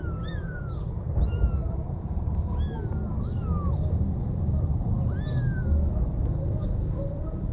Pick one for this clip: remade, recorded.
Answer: recorded